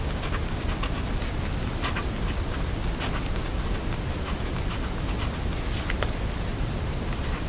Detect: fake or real real